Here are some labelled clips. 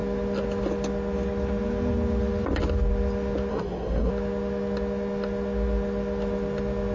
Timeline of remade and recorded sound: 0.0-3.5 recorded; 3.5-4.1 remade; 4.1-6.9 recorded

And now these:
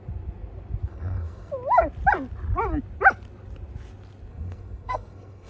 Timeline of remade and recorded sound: 0.0-0.9 recorded; 0.9-1.5 remade; 1.5-4.3 recorded; 4.3-5.5 remade

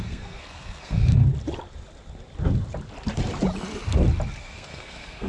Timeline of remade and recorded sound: 0.0-1.2 remade; 1.2-4.4 recorded; 4.4-5.3 remade

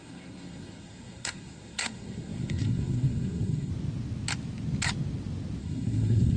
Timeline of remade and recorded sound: 0.0-3.7 remade; 3.7-5.6 recorded; 5.6-6.4 remade

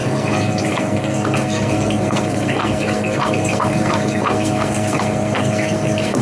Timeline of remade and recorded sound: 0.0-6.2 remade

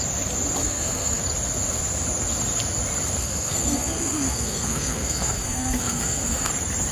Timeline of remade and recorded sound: 0.0-0.6 recorded; 0.6-1.2 remade; 1.2-3.2 recorded; 3.2-6.5 remade; 6.5-6.9 recorded

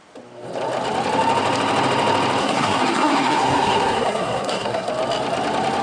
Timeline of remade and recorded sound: 0.0-2.4 recorded; 2.4-4.9 remade; 4.9-5.8 recorded